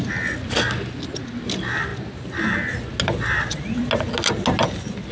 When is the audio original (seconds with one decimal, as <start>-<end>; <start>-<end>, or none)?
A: 0.0-5.1